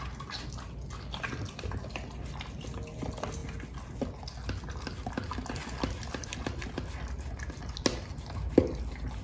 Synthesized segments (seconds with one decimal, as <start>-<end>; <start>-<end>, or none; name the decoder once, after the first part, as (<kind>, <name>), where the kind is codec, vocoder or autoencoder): none